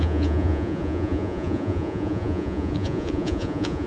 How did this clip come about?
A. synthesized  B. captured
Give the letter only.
A